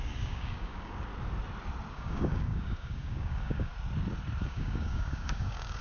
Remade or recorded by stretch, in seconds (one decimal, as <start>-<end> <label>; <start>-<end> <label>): 0.0-1.1 remade; 1.1-1.9 recorded; 1.9-3.7 remade; 3.7-4.4 recorded; 4.4-5.8 remade